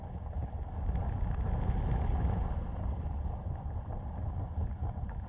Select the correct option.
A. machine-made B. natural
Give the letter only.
B